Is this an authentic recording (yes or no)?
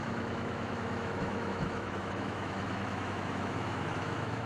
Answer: no